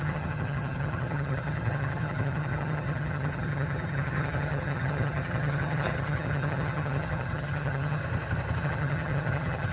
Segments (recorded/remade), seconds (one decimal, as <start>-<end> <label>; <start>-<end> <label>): 0.0-8.0 remade; 8.0-8.6 recorded; 8.6-9.7 remade